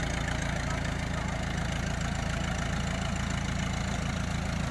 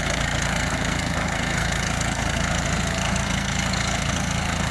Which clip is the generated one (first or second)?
second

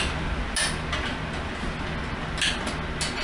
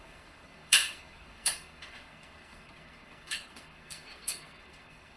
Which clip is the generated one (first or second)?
second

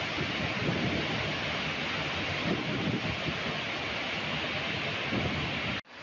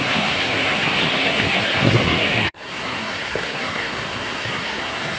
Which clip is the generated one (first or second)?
second